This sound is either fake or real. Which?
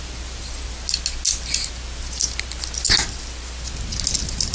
real